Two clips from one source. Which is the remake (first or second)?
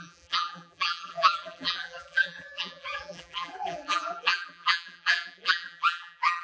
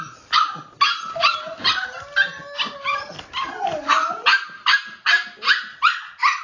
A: first